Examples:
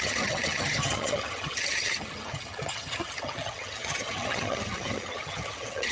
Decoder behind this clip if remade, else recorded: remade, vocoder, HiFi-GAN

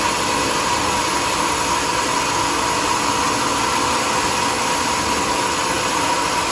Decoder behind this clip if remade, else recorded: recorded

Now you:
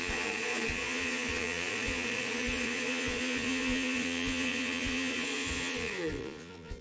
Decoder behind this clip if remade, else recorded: remade, vocoder, Vocos